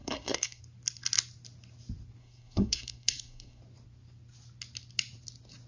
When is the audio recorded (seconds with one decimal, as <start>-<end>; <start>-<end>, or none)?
0.6-2.2; 3.6-5.7